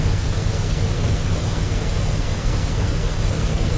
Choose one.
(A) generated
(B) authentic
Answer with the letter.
A